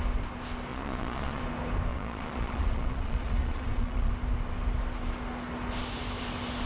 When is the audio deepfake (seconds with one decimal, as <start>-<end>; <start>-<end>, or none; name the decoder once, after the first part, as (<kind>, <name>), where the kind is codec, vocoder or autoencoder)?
0.7-1.4 (vocoder, Vocos); 1.9-4.1